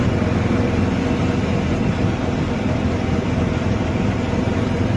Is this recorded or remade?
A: recorded